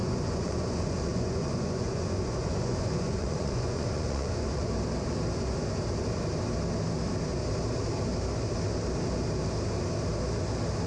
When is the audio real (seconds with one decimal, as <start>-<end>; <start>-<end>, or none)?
4.7-10.9